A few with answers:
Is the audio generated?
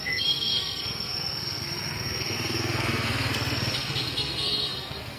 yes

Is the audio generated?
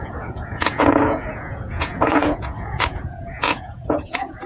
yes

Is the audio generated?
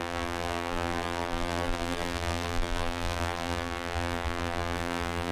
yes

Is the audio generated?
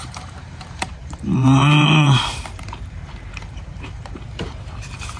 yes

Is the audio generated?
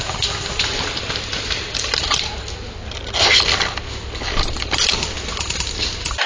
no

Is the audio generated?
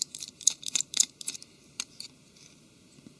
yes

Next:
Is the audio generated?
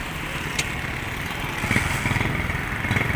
no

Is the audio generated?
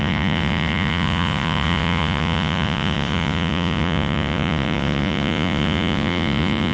yes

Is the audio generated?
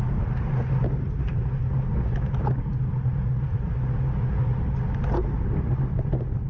no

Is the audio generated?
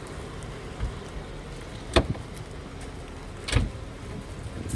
no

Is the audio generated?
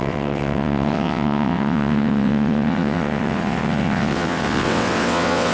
yes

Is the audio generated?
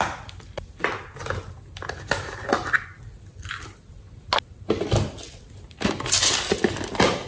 no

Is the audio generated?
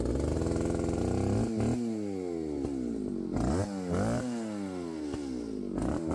no